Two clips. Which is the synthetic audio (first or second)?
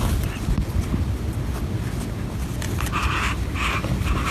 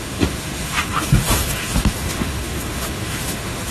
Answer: second